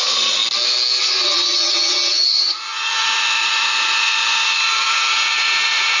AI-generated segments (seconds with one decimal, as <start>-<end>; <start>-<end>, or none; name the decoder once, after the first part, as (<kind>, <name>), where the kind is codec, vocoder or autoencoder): 0.0-0.4 (vocoder, Vocos); 1.0-6.0